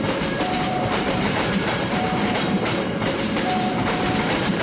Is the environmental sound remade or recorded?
remade